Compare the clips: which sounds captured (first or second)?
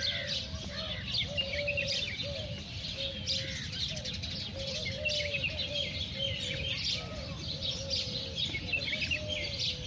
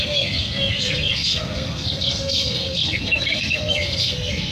first